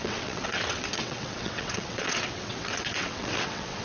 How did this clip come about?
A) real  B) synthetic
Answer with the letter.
B